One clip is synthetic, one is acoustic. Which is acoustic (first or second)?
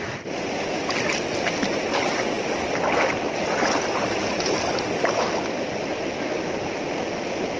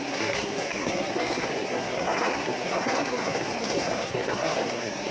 first